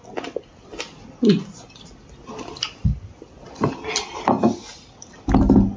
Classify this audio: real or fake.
real